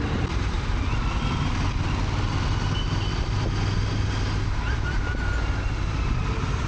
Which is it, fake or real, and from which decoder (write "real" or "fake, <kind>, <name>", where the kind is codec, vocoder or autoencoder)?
real